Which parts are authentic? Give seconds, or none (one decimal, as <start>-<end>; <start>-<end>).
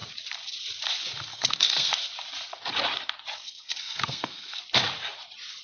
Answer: 0.0-1.3; 2.1-3.4; 4.6-5.6